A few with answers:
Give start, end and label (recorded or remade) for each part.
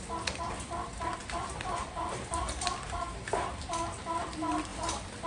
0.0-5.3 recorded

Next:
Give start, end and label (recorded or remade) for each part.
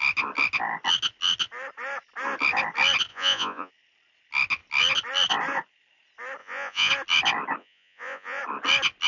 0.0-3.1 recorded; 3.1-3.7 remade; 3.7-6.4 recorded; 6.4-6.9 remade; 6.9-7.6 recorded; 7.6-8.4 remade; 8.4-9.1 recorded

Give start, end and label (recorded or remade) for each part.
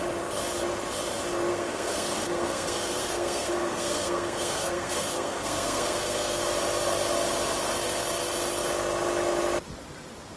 0.0-1.5 recorded; 1.5-6.4 remade; 6.4-10.4 recorded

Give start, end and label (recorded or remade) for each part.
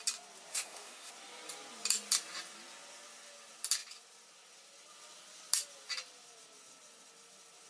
0.0-0.5 recorded; 0.5-1.1 remade; 1.1-7.7 recorded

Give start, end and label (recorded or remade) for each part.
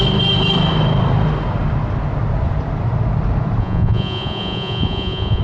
0.0-3.6 recorded; 3.6-5.4 remade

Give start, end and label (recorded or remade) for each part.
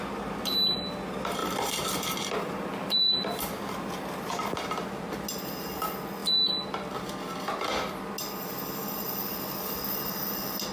0.0-1.4 recorded; 1.4-4.9 remade; 4.9-10.7 recorded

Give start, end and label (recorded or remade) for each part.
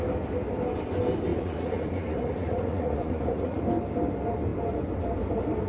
0.0-1.3 recorded; 1.3-3.6 remade; 3.6-5.7 recorded